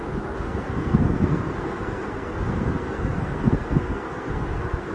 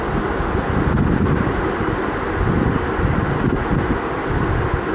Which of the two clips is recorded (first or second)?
second